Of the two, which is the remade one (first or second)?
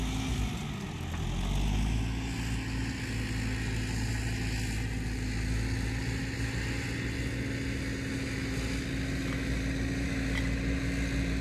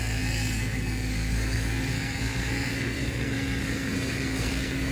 second